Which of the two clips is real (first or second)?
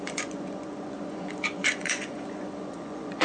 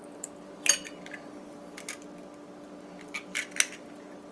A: second